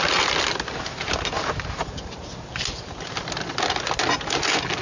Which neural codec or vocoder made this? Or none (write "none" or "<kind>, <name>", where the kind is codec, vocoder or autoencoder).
none